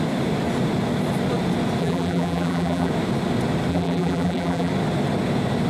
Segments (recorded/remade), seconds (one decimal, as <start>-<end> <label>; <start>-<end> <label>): 0.0-1.8 recorded; 1.8-2.9 remade; 2.9-3.7 recorded; 3.7-4.7 remade; 4.7-5.7 recorded